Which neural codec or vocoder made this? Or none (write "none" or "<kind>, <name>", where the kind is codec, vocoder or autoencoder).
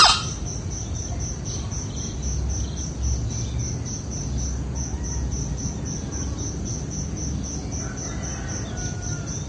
none